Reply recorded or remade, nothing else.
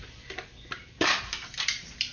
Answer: remade